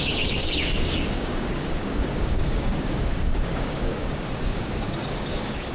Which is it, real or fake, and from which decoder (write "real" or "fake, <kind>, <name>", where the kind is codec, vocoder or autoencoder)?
fake, codec, DAC